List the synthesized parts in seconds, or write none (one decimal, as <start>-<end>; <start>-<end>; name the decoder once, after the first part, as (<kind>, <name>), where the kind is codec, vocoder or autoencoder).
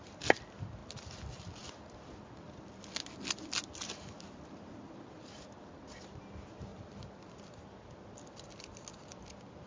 none